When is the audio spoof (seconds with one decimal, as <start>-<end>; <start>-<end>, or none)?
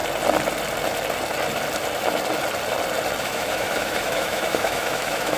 3.2-5.4